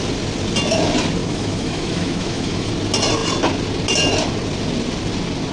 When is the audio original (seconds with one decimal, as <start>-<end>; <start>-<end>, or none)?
0.0-1.2; 2.7-5.5